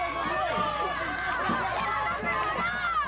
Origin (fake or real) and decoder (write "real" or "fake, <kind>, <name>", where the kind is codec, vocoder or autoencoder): real